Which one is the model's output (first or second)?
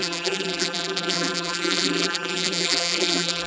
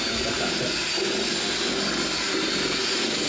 first